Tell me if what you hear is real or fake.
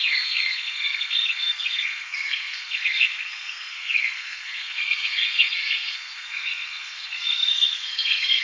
fake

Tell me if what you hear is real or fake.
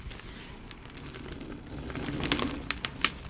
real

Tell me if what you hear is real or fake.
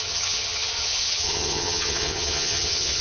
fake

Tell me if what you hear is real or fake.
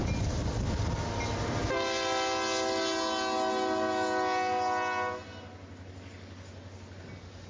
real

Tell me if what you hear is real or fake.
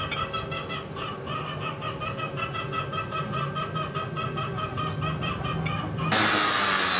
real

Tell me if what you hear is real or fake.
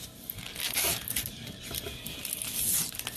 real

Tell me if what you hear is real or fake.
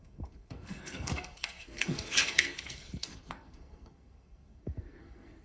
fake